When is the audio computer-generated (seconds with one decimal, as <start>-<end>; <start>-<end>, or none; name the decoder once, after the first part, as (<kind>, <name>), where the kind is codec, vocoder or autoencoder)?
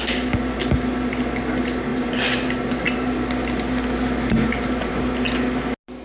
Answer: none